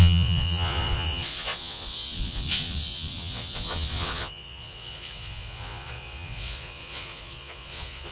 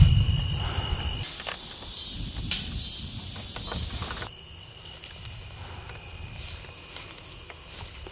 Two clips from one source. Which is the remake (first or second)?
first